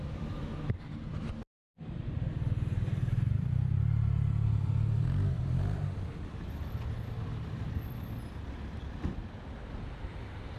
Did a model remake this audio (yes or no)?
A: yes